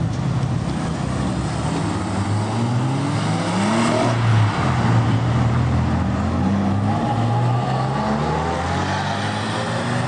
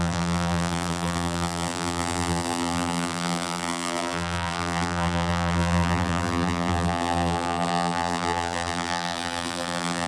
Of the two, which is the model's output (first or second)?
second